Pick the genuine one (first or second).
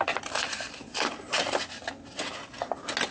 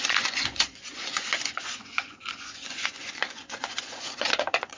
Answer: first